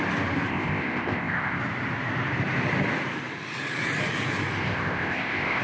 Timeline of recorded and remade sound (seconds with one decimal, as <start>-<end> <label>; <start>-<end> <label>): 0.0-0.5 recorded; 0.5-1.6 remade; 1.6-4.6 recorded; 4.6-5.6 remade